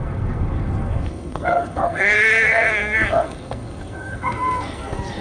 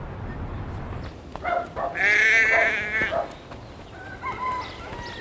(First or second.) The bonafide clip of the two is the second